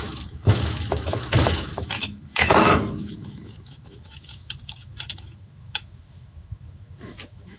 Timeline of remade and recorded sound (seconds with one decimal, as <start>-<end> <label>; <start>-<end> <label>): 0.0-7.6 remade